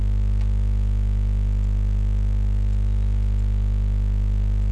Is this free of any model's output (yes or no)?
yes